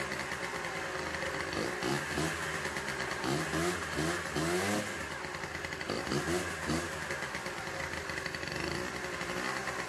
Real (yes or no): yes